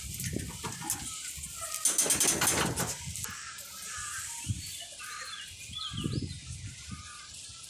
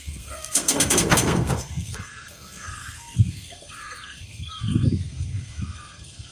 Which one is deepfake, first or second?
second